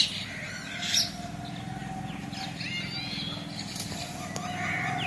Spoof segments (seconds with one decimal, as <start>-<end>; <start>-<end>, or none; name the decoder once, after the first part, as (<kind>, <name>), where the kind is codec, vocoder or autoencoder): none